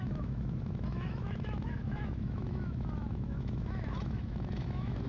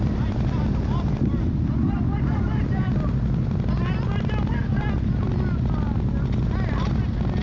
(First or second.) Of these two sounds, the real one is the second